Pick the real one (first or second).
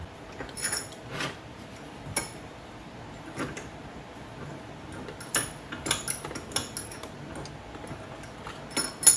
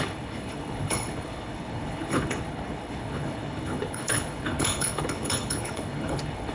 first